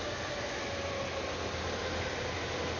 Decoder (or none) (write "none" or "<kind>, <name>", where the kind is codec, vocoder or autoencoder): none